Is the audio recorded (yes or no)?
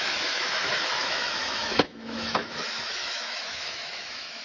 no